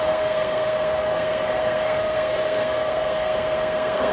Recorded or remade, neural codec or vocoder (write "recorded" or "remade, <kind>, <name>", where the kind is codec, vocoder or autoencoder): remade, codec, SNAC